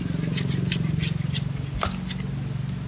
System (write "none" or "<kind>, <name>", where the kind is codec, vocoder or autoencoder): none